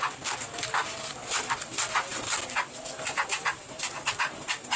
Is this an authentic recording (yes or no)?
yes